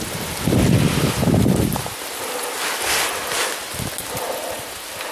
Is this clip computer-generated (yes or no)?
no